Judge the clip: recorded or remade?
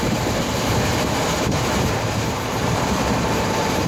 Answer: remade